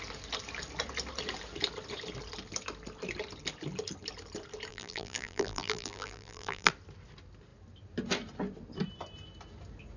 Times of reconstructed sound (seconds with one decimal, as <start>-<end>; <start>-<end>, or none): 4.7-6.7